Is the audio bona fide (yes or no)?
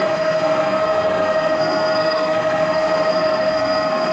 no